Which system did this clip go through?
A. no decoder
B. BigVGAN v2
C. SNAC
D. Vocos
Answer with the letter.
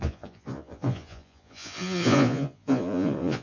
D